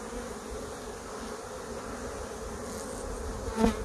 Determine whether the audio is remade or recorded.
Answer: recorded